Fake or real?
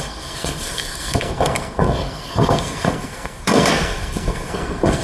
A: fake